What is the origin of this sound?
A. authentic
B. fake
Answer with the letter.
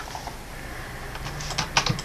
A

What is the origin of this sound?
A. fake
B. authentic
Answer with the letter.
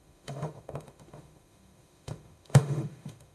A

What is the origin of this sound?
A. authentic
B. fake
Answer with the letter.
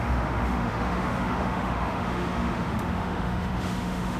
B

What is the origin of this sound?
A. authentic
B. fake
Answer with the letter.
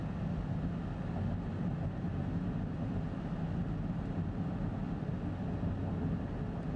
A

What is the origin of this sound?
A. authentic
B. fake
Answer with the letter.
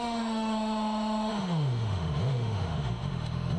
B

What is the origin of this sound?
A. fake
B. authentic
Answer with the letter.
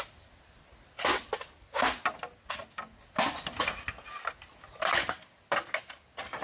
B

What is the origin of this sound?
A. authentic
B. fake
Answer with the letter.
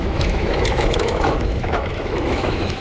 B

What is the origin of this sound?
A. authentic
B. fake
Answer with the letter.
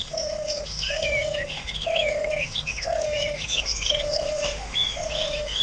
B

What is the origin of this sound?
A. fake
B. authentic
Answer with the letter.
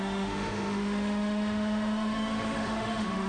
A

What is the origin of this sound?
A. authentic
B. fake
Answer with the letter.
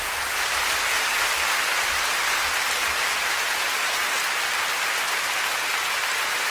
A